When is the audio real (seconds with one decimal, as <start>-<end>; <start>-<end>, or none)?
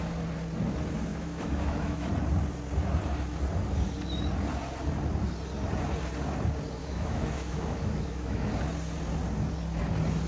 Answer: 0.0-1.1; 2.1-6.8; 8.5-10.3